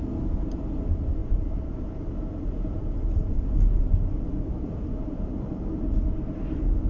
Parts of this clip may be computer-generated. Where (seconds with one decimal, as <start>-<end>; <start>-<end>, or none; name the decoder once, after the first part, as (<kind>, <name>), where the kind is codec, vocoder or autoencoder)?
none

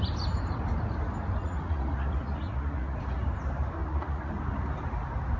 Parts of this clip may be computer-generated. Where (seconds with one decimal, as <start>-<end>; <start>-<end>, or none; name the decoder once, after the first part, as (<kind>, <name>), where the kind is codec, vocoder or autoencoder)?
1.4-3.0 (vocoder, Vocos); 3.8-4.3

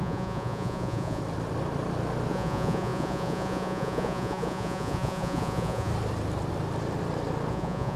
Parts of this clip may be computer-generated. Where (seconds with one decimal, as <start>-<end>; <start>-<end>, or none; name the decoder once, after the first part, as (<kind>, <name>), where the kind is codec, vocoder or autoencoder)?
0.0-1.2 (vocoder, Vocos); 2.3-5.9; 7.5-8.0

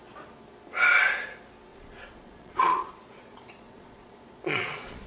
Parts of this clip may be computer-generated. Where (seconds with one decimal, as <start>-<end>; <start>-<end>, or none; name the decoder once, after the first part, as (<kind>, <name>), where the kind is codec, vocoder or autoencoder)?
1.7-5.1 (vocoder, Vocos)

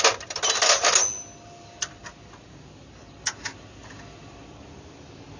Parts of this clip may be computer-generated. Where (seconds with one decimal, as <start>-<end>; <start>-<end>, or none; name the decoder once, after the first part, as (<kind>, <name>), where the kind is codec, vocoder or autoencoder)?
none

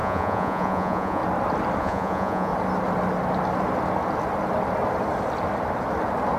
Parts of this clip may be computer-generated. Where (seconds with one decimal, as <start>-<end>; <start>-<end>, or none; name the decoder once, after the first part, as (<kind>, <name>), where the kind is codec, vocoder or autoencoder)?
0.0-1.2 (vocoder, Vocos); 1.8-2.5